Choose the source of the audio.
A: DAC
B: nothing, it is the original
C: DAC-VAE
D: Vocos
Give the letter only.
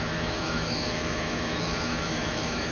C